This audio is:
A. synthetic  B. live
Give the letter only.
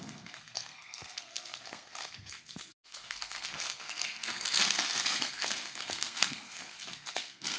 A